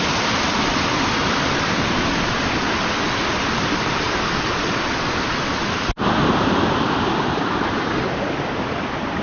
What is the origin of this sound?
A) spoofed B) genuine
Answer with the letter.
B